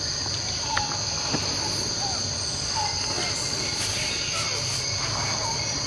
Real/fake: real